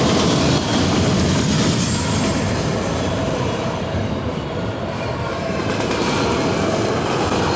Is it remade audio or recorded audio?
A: recorded